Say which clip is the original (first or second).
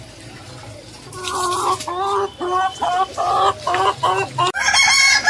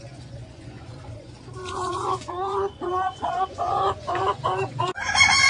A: first